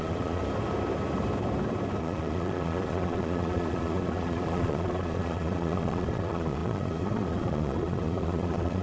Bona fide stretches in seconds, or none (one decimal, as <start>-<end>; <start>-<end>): 0.4-2.0